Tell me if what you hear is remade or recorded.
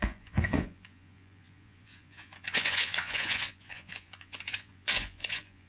remade